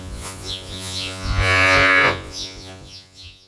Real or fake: fake